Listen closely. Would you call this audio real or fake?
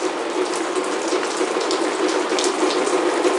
real